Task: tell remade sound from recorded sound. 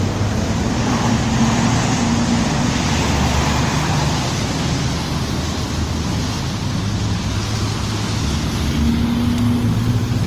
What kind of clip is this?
recorded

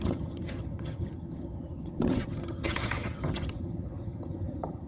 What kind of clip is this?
remade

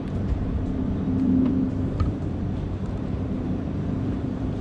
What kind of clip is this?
remade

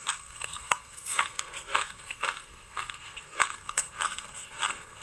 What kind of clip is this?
remade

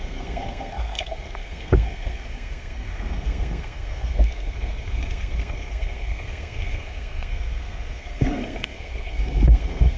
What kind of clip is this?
remade